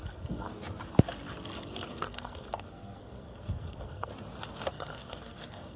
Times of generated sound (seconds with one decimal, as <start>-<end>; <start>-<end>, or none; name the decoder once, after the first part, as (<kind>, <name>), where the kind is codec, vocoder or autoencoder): 0.0-0.5 (codec, SNAC); 1.9-4.1; 4.7-5.8